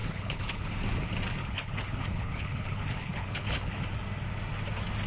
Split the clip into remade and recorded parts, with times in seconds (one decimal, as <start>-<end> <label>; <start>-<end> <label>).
0.0-0.7 remade; 0.7-1.4 recorded; 1.4-3.8 remade; 3.8-5.1 recorded